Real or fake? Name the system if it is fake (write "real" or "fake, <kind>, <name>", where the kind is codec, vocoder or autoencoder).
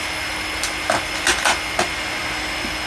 real